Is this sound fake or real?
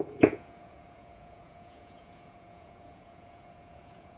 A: fake